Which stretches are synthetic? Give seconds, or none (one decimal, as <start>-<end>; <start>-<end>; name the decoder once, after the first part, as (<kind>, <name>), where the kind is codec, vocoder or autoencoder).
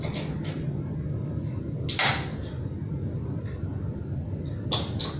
none